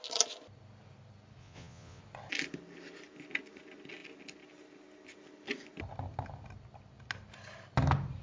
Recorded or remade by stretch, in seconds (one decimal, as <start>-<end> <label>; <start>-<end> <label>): 0.0-1.4 recorded; 1.4-2.0 remade; 2.0-8.2 recorded